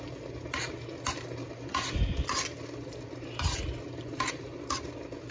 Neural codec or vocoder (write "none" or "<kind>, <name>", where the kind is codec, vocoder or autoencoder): none